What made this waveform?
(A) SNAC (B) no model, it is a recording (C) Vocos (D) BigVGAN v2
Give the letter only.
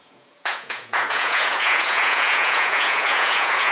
C